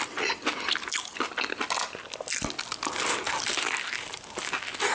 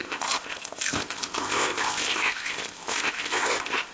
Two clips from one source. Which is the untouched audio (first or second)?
first